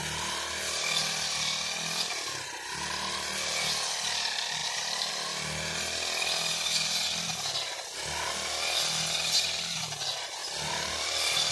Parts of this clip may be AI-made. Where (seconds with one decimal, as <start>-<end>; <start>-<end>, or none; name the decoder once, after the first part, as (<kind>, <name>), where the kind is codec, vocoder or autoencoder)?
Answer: 10.4-11.5 (vocoder, BigVGAN v2)